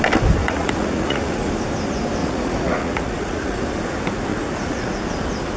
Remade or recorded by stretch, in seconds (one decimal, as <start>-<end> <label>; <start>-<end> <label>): 0.0-0.4 recorded; 0.4-1.5 remade; 1.5-2.2 recorded; 2.2-3.6 remade; 3.6-4.3 recorded; 4.3-5.0 remade; 5.0-5.6 recorded